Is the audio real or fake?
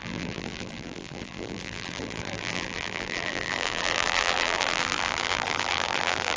fake